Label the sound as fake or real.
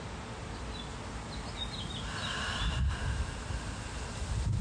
real